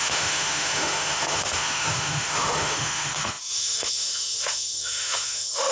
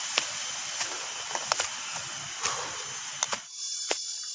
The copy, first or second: first